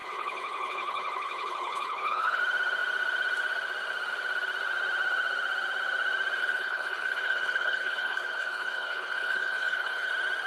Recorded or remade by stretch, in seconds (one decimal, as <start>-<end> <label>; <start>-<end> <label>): 0.0-2.4 remade; 2.4-6.4 recorded; 6.4-10.1 remade; 10.1-10.5 recorded